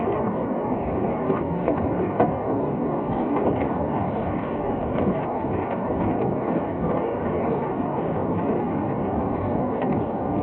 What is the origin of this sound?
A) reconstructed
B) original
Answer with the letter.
A